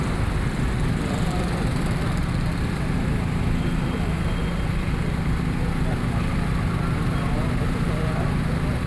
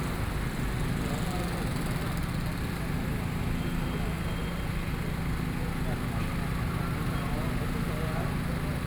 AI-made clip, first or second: first